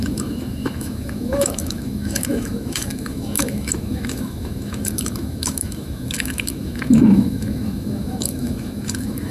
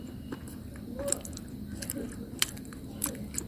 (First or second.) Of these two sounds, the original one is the second